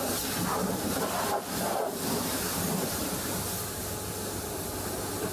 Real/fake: real